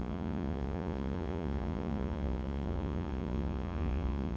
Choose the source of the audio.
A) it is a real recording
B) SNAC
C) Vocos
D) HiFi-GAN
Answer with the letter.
C